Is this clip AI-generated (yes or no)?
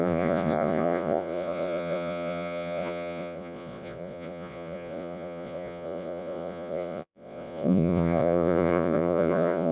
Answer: yes